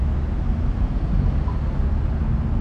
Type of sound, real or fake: real